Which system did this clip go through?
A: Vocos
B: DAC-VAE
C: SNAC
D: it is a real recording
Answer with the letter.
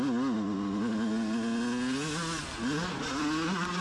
D